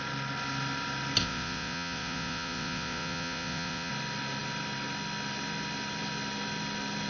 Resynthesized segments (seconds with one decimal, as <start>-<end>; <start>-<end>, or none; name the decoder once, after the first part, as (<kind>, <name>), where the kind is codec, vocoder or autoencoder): 1.2-3.9 (vocoder, Vocos)